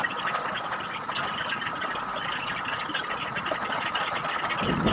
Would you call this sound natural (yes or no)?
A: yes